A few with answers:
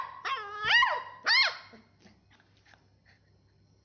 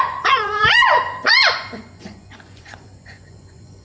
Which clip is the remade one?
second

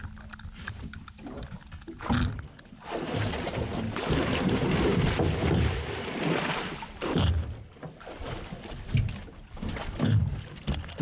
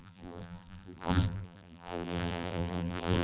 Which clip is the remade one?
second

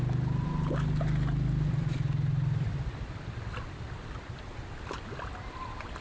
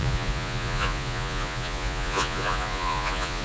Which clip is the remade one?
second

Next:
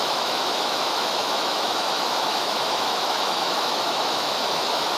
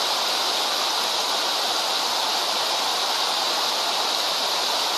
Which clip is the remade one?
first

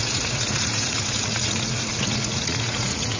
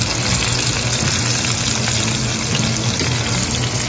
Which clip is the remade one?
first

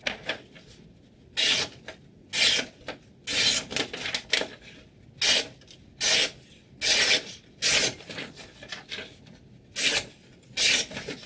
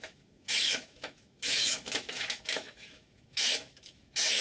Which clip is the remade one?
second